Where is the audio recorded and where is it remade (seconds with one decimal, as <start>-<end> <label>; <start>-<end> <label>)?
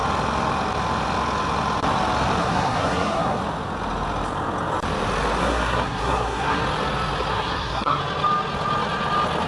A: 0.0-2.4 recorded; 2.4-3.4 remade; 3.4-5.4 recorded; 5.4-6.6 remade; 6.6-7.3 recorded; 7.3-8.0 remade; 8.0-9.5 recorded